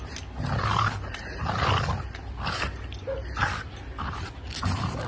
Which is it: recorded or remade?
recorded